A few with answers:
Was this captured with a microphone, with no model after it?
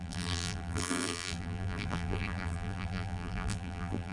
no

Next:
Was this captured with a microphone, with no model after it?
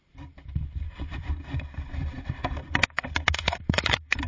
no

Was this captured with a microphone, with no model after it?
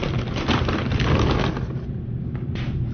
yes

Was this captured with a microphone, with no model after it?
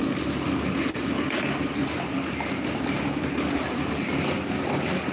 yes